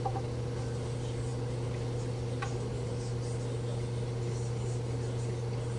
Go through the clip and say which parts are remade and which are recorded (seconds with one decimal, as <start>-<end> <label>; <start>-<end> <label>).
0.0-5.8 recorded